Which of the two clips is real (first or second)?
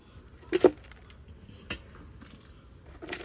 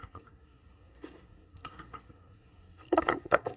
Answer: first